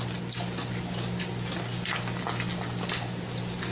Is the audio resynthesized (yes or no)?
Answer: no